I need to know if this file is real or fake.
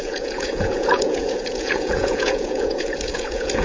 fake